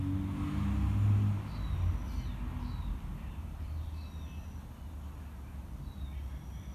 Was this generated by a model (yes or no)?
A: no